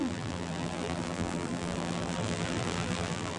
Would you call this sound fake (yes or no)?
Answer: yes